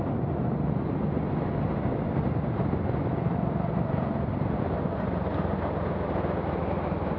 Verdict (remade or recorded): recorded